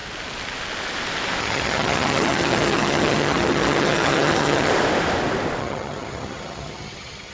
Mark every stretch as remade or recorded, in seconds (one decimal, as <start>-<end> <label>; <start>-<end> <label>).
0.0-1.4 recorded; 1.4-4.7 remade; 4.7-5.6 recorded; 5.6-7.3 remade